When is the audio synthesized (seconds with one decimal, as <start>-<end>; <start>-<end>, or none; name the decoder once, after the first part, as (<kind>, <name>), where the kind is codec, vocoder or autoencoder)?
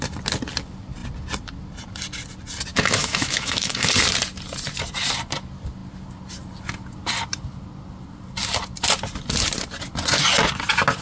2.7-3.9 (autoencoder, DAC-VAE)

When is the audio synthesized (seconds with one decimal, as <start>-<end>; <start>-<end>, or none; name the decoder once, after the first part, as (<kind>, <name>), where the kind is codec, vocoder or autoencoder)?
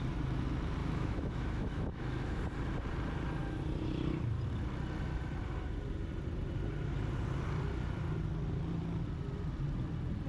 0.8-2.4 (autoencoder, DAC-VAE)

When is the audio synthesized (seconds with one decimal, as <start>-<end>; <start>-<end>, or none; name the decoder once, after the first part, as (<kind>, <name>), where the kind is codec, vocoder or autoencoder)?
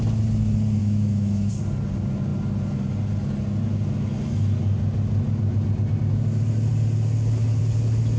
0.8-1.5 (autoencoder, DAC-VAE)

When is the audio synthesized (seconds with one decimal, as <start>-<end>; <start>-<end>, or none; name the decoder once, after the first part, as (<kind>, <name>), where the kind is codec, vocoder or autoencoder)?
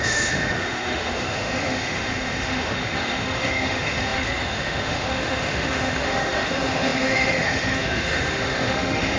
0.0-9.2 (autoencoder, DAC-VAE)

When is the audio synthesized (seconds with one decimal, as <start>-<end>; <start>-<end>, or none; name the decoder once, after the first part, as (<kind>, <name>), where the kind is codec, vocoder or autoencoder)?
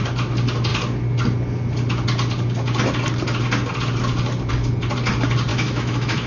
5.5-6.3 (autoencoder, DAC-VAE)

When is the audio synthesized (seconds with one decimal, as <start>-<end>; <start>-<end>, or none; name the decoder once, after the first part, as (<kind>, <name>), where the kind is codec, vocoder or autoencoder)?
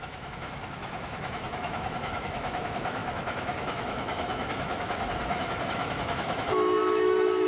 0.0-7.5 (autoencoder, DAC-VAE)